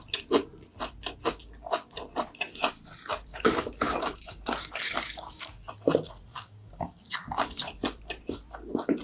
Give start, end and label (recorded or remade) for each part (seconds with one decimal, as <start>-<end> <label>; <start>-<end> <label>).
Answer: 0.0-3.3 recorded; 3.3-5.7 remade; 5.7-6.3 recorded; 6.3-7.8 remade; 7.8-9.0 recorded